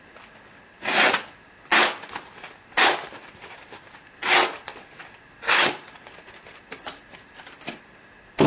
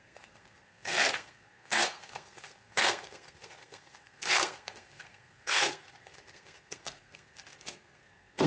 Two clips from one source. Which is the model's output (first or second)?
second